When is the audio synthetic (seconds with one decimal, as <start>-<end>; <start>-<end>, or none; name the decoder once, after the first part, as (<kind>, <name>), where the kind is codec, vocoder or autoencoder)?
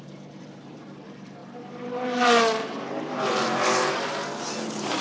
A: 0.0-5.0 (vocoder, BigVGAN v2)